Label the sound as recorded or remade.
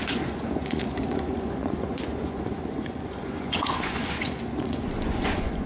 remade